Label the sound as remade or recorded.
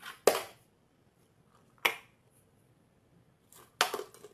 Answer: recorded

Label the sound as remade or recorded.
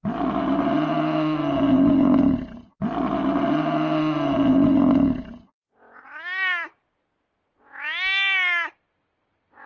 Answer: recorded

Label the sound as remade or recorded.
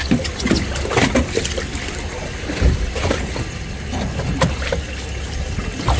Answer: recorded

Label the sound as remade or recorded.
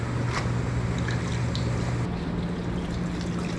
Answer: recorded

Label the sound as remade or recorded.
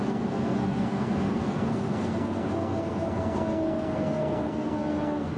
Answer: remade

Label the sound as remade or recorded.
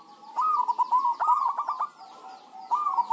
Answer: recorded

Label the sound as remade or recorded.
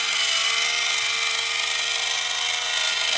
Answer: recorded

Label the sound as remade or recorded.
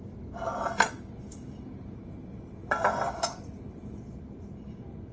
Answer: recorded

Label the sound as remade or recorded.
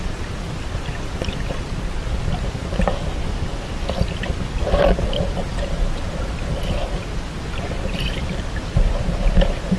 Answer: recorded